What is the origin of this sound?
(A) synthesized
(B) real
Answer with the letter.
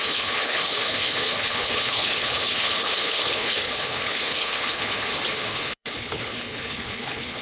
A